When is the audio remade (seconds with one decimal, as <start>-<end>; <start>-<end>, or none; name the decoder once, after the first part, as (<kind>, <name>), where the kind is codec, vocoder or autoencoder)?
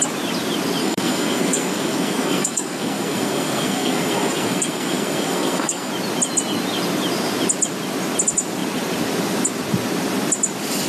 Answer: 0.8-5.9 (codec, SNAC)